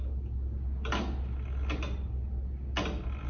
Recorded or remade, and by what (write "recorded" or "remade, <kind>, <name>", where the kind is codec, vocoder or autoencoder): recorded